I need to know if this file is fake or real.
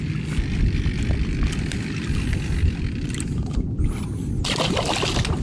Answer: real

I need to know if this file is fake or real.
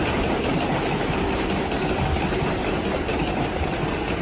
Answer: real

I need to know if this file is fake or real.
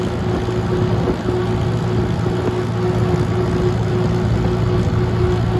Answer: real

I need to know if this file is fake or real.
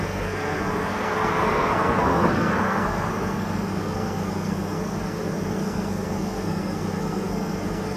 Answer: fake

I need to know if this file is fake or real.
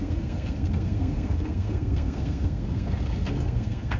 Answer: fake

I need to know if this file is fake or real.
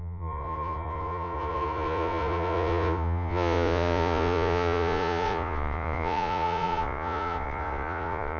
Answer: fake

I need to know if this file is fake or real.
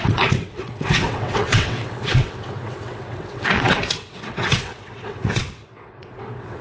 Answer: fake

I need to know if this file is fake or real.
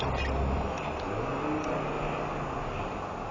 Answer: real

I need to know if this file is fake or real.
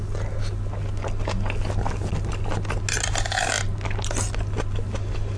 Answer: real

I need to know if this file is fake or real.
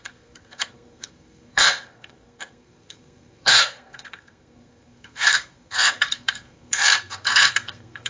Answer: fake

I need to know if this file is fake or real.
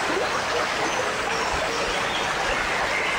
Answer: real